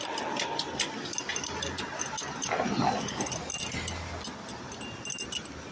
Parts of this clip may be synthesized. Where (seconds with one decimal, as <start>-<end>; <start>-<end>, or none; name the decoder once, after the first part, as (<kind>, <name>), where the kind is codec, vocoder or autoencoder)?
none